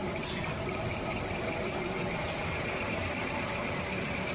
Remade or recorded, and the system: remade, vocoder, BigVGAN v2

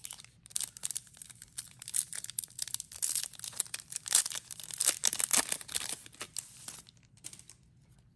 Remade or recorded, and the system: recorded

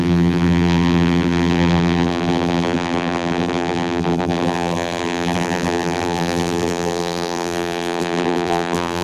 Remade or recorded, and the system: remade, vocoder, BigVGAN v2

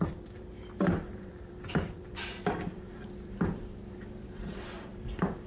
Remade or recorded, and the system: remade, vocoder, BigVGAN v2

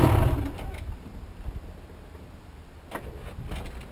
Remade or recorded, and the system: recorded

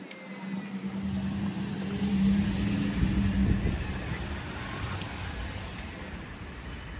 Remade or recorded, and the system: recorded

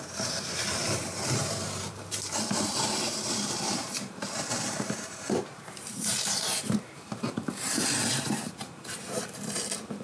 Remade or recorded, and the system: remade, vocoder, BigVGAN v2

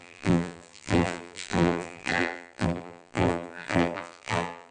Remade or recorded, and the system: remade, vocoder, BigVGAN v2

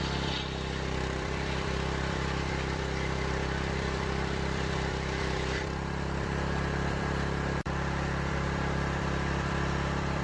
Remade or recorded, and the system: remade, vocoder, BigVGAN v2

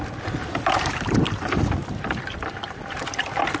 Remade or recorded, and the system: remade, vocoder, BigVGAN v2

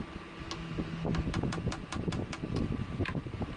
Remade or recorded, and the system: recorded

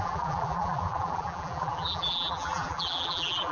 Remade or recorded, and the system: remade, vocoder, BigVGAN v2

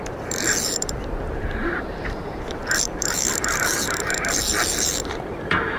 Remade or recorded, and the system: remade, vocoder, BigVGAN v2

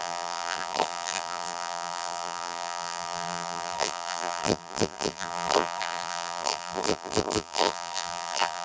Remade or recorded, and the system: remade, vocoder, BigVGAN v2